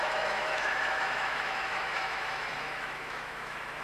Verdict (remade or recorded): remade